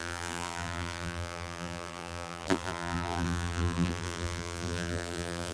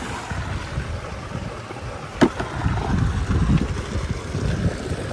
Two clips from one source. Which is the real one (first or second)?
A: second